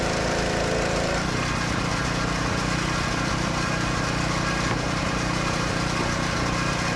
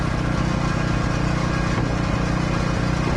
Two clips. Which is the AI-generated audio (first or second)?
first